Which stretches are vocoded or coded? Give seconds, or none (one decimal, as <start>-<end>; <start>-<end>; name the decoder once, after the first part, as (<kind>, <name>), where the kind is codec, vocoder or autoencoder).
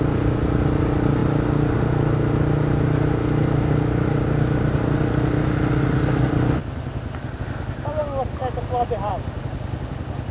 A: none